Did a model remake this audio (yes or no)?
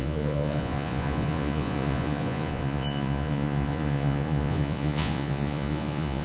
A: yes